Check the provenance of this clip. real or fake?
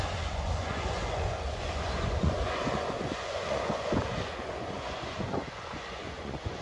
fake